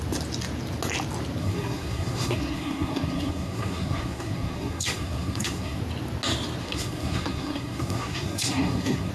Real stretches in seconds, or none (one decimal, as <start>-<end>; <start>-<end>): 0.0-1.4; 5.8-6.6